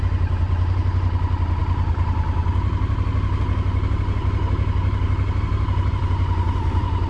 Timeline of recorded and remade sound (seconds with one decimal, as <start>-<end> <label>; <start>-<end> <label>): 0.0-7.1 recorded